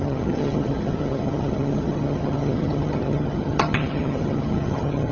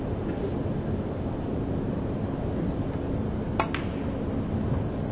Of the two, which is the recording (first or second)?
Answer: second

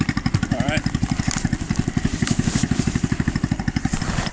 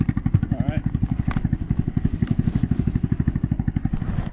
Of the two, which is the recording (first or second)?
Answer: second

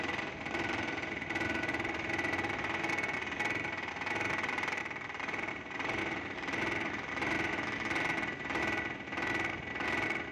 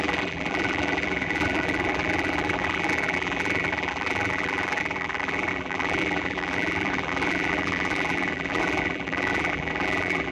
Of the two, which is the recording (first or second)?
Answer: first